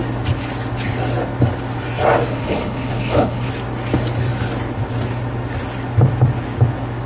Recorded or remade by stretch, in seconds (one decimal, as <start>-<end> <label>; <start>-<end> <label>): 0.0-2.3 recorded; 2.3-3.5 remade; 3.5-7.1 recorded